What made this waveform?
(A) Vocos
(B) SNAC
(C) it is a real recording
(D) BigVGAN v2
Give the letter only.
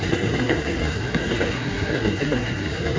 B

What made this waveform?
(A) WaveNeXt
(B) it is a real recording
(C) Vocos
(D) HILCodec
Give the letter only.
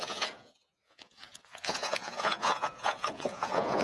C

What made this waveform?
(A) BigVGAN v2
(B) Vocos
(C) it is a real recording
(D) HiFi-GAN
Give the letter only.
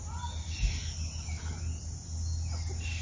C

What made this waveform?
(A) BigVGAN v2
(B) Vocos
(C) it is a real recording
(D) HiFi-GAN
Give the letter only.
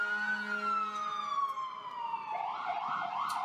C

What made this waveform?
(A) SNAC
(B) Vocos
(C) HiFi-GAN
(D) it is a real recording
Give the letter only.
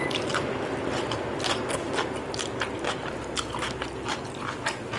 D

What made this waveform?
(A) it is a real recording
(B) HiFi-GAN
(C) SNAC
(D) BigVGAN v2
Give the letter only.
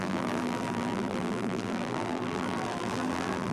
D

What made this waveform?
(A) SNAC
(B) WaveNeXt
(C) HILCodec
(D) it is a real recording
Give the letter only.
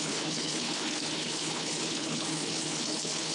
C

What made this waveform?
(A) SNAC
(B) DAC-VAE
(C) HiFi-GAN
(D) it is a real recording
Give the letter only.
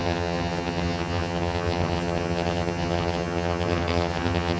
C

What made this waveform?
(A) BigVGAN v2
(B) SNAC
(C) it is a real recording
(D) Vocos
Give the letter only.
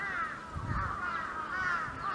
C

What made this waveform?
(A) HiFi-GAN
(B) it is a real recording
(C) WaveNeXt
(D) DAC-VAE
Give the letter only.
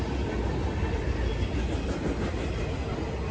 B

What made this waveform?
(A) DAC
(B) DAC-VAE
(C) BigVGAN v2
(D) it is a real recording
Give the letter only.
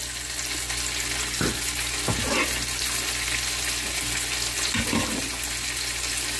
D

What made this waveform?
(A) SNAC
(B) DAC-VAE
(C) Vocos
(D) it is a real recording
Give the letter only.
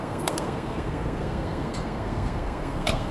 A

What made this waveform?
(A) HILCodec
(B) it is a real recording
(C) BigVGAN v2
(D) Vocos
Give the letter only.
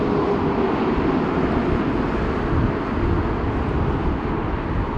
B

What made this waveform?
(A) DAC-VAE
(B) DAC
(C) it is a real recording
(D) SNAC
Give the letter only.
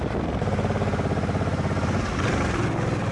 C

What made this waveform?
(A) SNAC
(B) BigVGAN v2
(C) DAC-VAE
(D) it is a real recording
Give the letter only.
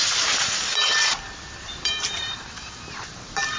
B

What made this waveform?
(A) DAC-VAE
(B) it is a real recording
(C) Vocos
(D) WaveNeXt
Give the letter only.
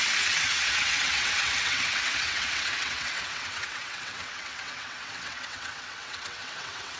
D